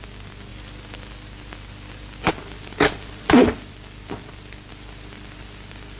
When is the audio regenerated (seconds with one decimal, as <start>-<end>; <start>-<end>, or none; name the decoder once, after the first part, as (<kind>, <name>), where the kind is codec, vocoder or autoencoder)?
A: 0.0-0.5 (vocoder, BigVGAN v2); 2.3-6.0